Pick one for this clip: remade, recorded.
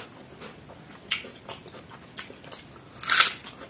recorded